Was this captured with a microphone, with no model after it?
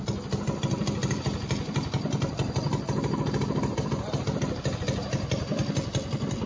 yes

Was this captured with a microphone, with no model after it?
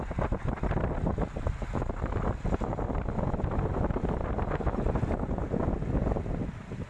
yes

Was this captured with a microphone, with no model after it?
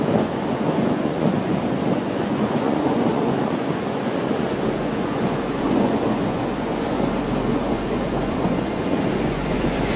no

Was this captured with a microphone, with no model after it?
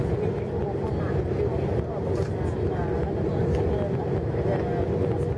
yes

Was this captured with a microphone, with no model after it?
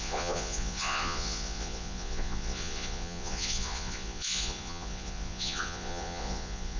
no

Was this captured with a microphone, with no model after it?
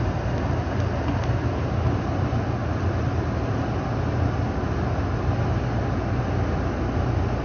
yes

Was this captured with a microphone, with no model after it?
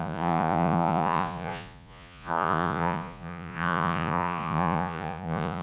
no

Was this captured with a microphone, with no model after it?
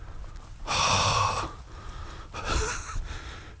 yes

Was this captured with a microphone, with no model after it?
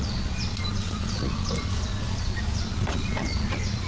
no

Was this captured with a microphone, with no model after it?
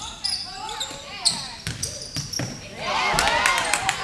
yes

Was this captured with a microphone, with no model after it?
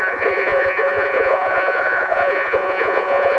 no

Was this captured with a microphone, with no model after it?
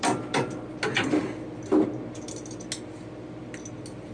yes